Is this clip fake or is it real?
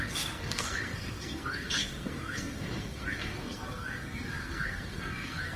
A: fake